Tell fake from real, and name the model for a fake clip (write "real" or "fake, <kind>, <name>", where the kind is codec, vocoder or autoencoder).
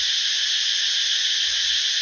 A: real